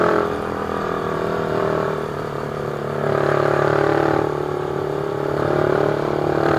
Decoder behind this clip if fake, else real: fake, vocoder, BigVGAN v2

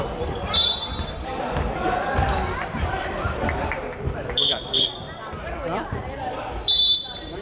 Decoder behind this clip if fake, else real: fake, vocoder, BigVGAN v2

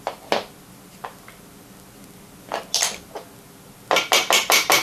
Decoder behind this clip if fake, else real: real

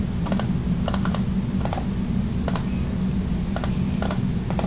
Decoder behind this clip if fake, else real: real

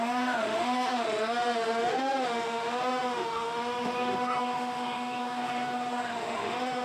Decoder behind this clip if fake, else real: fake, autoencoder, DAC-VAE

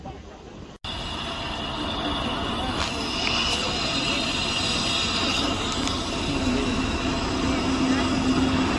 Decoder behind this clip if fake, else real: real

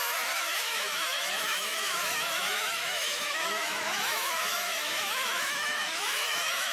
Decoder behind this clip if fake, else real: fake, autoencoder, DAC-VAE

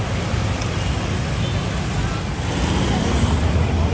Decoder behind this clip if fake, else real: real